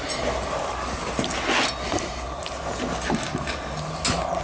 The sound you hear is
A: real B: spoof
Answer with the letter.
A